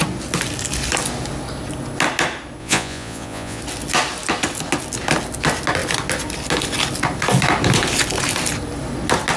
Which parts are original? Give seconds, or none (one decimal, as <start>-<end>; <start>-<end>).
0.0-2.6; 3.6-9.4